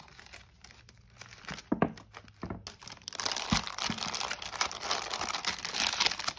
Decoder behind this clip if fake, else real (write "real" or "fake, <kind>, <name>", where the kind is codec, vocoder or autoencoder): real